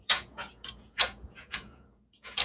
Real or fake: fake